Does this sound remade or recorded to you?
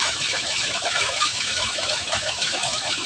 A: remade